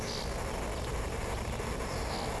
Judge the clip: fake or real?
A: real